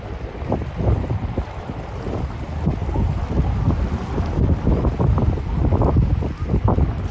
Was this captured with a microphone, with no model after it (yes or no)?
yes